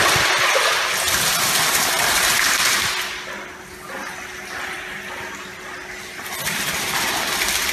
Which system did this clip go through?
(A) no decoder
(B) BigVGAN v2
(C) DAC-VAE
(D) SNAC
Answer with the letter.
A